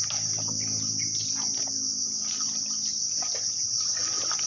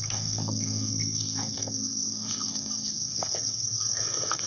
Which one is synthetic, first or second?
second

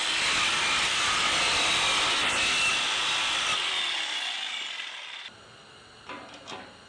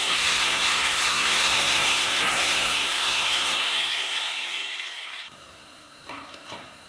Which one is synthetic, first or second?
second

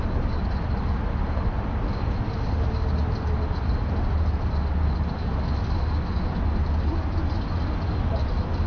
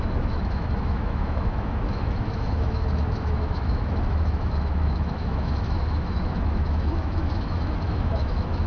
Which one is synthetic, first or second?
second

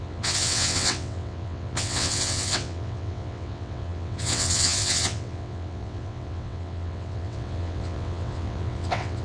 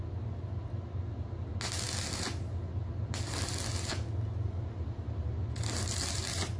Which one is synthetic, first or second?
first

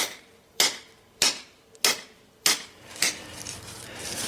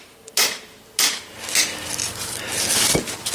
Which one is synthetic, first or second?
first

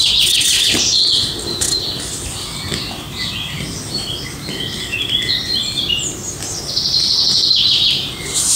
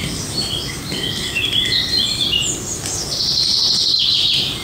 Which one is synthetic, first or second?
second